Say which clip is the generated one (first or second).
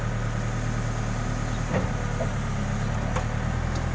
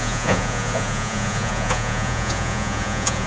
second